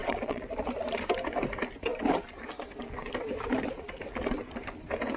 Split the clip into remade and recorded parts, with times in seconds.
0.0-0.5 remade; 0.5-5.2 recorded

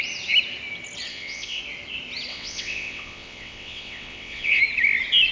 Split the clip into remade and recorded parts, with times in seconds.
0.0-1.1 recorded; 1.1-1.6 remade; 1.6-2.3 recorded; 2.3-4.6 remade; 4.6-5.3 recorded

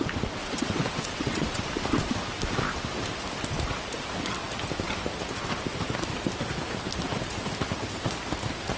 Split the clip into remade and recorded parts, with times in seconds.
0.0-0.4 recorded; 0.4-1.6 remade; 1.6-8.8 recorded